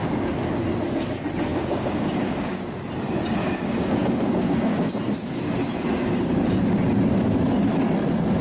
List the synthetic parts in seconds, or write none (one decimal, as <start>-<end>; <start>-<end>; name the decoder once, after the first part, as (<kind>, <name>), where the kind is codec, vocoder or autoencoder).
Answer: 1.5-2.8 (codec, DAC); 3.4-5.0